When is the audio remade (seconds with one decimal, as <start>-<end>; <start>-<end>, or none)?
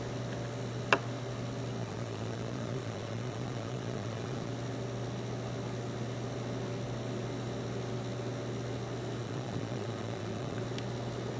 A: 1.8-4.5; 9.2-10.6